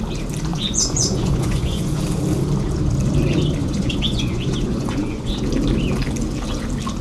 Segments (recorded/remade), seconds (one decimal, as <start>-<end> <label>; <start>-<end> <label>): 0.0-0.5 recorded; 0.5-2.0 remade; 2.0-3.6 recorded; 3.6-5.4 remade; 5.4-7.0 recorded